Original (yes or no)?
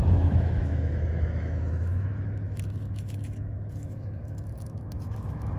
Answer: no